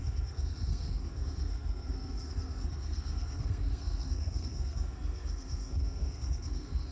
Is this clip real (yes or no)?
no